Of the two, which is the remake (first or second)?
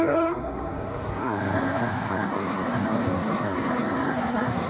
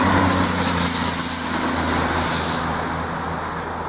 first